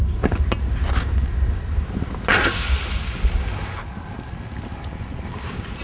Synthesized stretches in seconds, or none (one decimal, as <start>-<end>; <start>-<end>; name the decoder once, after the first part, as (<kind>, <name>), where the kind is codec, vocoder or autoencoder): none